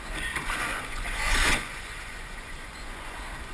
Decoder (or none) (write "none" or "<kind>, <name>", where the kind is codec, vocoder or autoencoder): vocoder, Vocos